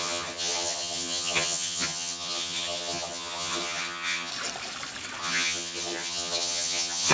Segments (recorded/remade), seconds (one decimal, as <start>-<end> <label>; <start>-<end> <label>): 0.0-4.3 remade; 4.3-5.2 recorded; 5.2-7.1 remade